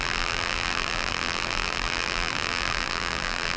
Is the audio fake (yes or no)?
yes